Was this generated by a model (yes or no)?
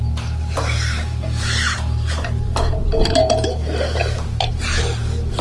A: no